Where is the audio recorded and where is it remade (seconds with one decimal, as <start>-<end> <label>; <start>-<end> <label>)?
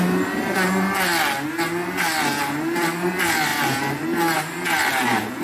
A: 0.0-5.4 recorded